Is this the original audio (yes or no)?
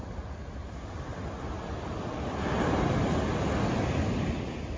yes